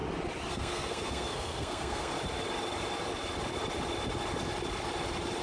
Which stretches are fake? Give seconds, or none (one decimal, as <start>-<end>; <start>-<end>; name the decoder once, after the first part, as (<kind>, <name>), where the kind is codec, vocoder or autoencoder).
0.5-2.1 (codec, SNAC)